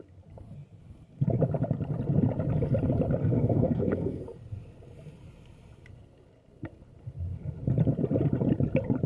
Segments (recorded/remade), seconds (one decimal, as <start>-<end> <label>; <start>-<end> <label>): 0.0-3.2 recorded; 3.2-4.2 remade; 4.2-9.1 recorded